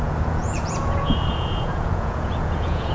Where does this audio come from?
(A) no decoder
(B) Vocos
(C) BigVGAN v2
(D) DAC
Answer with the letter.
B